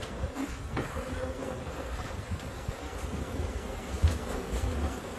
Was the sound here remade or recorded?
remade